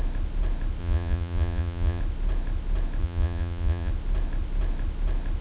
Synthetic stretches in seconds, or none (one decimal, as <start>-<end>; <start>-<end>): 0.8-2.0; 3.0-3.9